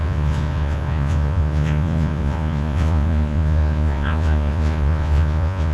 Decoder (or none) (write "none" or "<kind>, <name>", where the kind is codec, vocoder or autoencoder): vocoder, Vocos